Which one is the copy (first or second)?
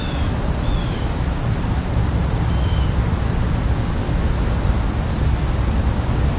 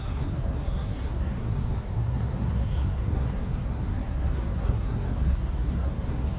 second